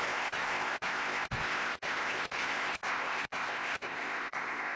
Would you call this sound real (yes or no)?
no